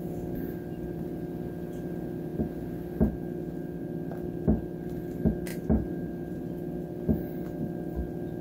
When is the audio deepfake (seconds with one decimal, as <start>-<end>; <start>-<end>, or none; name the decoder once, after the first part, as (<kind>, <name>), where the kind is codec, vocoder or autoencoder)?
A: 5.5-6.4 (vocoder, BigVGAN v2)